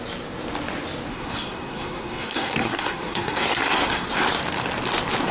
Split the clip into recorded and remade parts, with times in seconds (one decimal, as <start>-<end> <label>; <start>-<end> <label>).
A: 0.0-1.1 recorded; 1.1-4.1 remade; 4.1-5.3 recorded

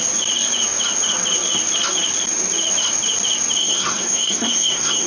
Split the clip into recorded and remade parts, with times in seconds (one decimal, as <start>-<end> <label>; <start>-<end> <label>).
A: 0.0-3.6 recorded; 3.6-5.1 remade